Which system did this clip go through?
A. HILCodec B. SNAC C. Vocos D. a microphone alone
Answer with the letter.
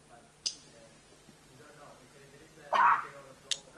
D